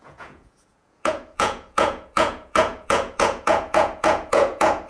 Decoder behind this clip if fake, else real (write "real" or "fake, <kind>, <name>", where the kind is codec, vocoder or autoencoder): fake, vocoder, Vocos